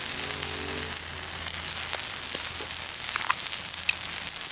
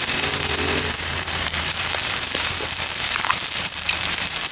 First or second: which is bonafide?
first